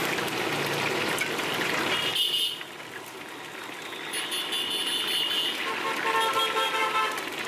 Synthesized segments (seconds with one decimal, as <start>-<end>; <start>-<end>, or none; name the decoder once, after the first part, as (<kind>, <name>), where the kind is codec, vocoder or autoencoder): none